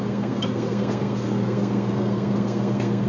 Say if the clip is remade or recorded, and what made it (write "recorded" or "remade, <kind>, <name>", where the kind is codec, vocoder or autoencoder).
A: remade, codec, SNAC